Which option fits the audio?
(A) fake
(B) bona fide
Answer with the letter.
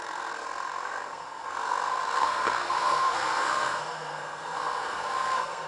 A